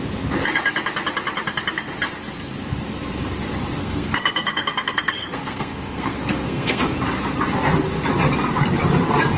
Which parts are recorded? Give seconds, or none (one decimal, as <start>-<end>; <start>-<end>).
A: 0.0-3.8; 6.8-9.4